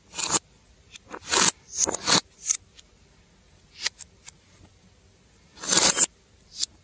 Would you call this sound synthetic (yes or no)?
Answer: no